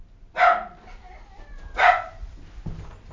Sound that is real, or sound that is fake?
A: real